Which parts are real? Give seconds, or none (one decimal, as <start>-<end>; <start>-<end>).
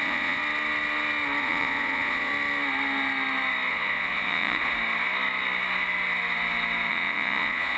0.4-1.4; 2.3-3.7; 4.7-6.9